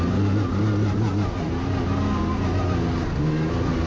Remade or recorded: recorded